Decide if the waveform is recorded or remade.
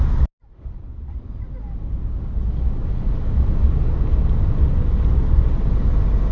recorded